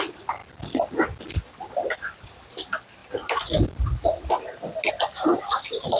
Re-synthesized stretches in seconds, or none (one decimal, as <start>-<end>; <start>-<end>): none